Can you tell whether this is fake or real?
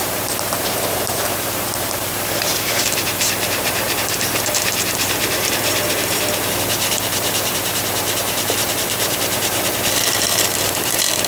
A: fake